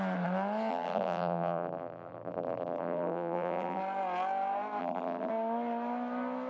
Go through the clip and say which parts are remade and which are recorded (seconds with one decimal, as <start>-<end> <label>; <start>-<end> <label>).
0.0-0.7 recorded; 0.7-3.8 remade; 3.8-4.8 recorded; 4.8-5.3 remade; 5.3-6.5 recorded